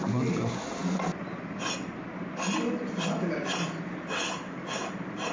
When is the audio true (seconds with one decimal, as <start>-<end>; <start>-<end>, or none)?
0.0-5.3